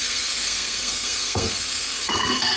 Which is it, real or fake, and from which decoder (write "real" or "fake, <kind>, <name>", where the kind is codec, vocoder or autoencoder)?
fake, codec, SNAC